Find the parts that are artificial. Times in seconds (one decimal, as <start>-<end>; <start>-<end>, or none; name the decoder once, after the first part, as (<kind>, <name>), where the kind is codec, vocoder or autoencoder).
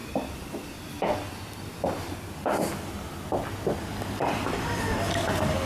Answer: 0.0-0.9 (vocoder, BigVGAN v2); 4.2-5.1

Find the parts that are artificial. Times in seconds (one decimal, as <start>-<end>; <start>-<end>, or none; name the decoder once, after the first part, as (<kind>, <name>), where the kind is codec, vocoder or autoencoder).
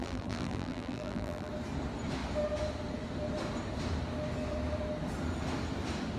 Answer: 0.0-1.5 (vocoder, BigVGAN v2)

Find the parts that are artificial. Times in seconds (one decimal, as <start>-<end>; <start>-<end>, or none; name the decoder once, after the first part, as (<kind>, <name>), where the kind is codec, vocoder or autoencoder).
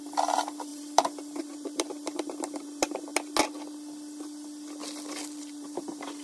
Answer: 0.0-3.1 (vocoder, BigVGAN v2); 5.4-6.2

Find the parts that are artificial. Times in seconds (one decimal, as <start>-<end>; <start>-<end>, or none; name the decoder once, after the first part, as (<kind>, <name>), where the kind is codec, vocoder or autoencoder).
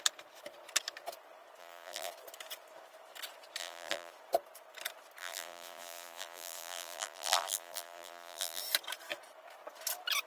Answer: 1.6-2.1 (vocoder, BigVGAN v2); 3.6-4.1; 5.2-8.6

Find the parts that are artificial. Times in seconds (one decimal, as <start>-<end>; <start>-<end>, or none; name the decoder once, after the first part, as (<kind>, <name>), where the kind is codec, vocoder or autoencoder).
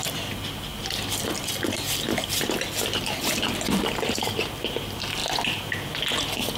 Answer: none